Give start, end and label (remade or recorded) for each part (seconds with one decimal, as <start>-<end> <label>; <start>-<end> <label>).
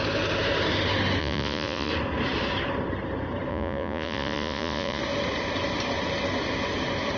0.0-1.2 recorded; 1.2-1.9 remade; 1.9-3.5 recorded; 3.5-5.0 remade; 5.0-7.2 recorded